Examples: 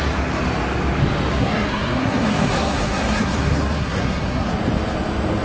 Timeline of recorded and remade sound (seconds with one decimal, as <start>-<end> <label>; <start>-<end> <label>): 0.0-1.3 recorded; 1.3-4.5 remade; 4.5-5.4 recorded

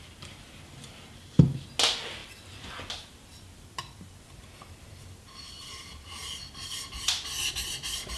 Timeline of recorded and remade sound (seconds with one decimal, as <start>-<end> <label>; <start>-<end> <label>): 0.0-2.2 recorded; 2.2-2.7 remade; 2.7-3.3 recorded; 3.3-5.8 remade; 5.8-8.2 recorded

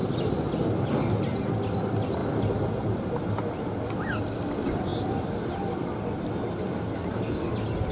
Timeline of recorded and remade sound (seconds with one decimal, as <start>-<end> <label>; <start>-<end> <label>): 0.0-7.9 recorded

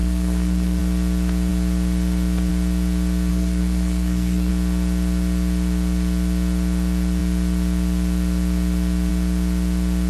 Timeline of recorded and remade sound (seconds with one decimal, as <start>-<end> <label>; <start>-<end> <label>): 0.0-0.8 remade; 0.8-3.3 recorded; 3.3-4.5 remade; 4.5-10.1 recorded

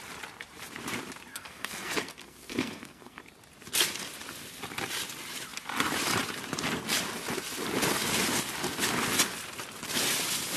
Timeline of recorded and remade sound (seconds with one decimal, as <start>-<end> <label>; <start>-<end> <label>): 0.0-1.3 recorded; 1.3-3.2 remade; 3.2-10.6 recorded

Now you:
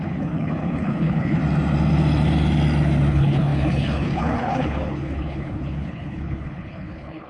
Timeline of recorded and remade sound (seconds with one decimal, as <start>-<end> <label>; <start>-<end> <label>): 0.0-1.4 remade; 1.4-3.1 recorded; 3.1-7.3 remade